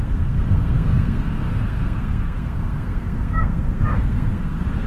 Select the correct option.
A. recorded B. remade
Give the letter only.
B